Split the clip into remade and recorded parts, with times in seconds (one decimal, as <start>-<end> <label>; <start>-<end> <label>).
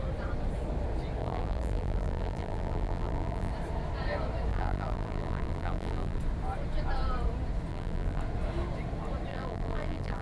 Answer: 0.0-1.2 recorded; 1.2-3.5 remade; 3.5-4.5 recorded; 4.5-6.2 remade; 6.2-7.7 recorded; 7.7-8.2 remade; 8.2-9.3 recorded; 9.3-10.2 remade